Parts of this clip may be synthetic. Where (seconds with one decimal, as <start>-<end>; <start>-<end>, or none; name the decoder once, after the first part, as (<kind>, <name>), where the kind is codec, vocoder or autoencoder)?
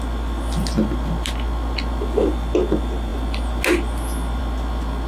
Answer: none